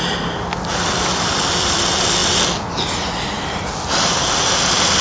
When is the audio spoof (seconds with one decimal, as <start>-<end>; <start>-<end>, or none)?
none